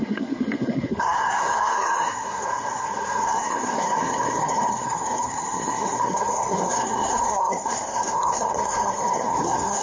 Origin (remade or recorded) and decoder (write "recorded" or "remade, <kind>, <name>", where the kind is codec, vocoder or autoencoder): remade, codec, SNAC